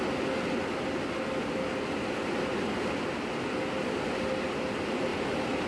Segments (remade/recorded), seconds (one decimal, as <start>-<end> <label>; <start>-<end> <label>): 0.0-5.7 recorded